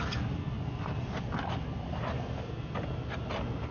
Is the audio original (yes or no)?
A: yes